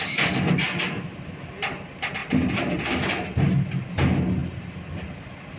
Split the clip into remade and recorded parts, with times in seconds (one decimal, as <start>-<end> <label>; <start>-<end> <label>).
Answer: 0.0-5.6 recorded